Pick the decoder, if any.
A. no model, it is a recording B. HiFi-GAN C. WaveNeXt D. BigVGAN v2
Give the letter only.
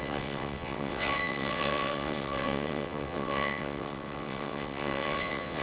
C